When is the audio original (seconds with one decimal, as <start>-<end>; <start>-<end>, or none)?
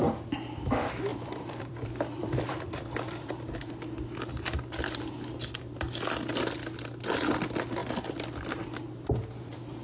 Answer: 0.0-1.1; 3.6-9.8